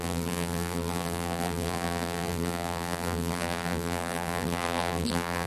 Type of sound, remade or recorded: remade